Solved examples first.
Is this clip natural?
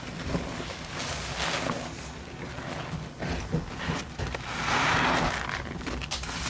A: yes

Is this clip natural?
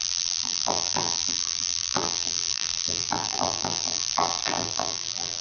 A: no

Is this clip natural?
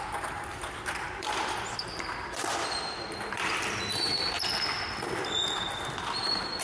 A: no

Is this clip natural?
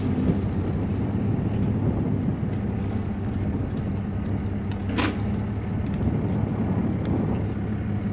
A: yes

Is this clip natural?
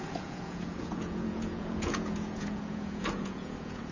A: no